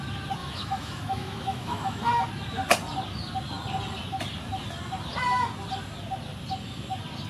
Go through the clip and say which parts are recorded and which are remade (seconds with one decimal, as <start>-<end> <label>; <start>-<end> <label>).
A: 0.0-0.4 recorded; 0.4-2.1 remade; 2.1-7.3 recorded

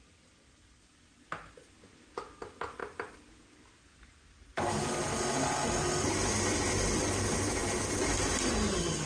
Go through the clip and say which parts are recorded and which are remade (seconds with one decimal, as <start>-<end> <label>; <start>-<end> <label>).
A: 0.0-9.1 recorded

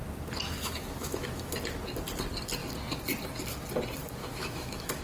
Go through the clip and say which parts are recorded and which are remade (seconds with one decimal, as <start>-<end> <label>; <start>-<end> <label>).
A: 0.0-0.6 recorded; 0.6-1.6 remade; 1.6-4.2 recorded; 4.2-5.0 remade